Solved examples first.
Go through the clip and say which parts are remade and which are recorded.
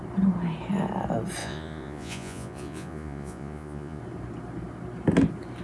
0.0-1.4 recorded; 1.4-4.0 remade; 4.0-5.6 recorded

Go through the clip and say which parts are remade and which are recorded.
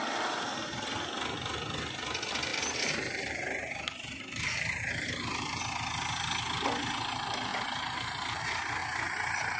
0.0-2.5 recorded; 2.5-5.6 remade; 5.6-7.5 recorded; 7.5-8.4 remade; 8.4-9.6 recorded